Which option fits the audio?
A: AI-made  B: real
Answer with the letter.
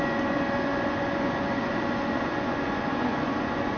A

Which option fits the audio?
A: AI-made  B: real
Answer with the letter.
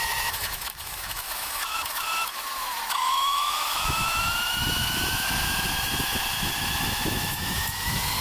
A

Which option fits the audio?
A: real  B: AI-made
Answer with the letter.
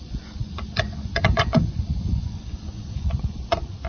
B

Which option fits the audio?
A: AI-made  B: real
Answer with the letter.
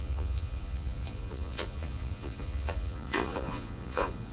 A